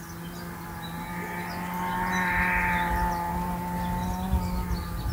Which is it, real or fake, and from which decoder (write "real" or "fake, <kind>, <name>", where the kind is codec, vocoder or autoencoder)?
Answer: real